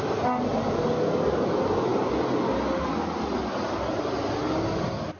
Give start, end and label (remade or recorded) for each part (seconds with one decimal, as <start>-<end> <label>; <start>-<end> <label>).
0.0-5.2 recorded